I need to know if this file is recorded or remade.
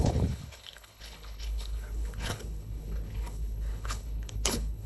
remade